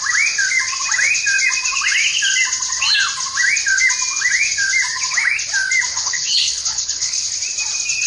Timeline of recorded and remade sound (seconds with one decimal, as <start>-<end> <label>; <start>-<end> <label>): 0.0-5.9 recorded; 5.9-7.3 remade; 7.3-8.1 recorded